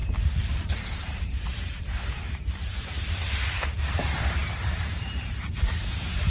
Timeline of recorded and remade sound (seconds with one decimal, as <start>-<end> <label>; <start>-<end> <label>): 0.0-0.7 recorded; 0.7-6.3 remade